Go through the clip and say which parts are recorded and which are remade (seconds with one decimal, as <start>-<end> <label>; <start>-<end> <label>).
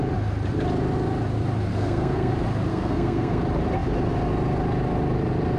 0.0-1.7 recorded; 1.7-2.3 remade; 2.3-2.7 recorded; 2.7-3.4 remade; 3.4-5.6 recorded